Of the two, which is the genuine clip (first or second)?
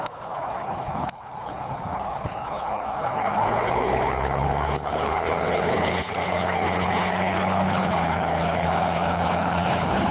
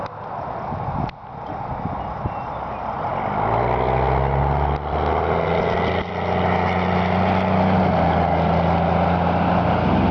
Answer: second